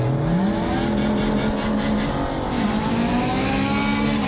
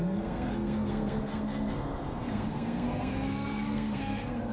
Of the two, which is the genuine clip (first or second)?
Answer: first